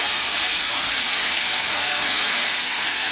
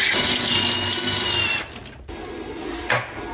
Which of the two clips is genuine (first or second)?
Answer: second